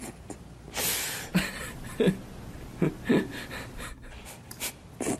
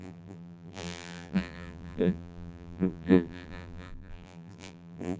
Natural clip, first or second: first